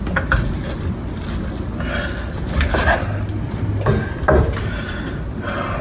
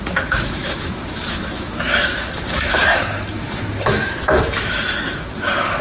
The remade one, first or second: second